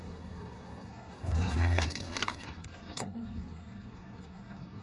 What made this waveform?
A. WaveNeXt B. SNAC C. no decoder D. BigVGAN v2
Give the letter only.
B